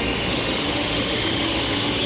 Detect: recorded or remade remade